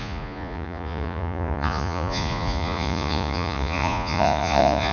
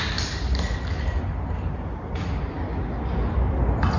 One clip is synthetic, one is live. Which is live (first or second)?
second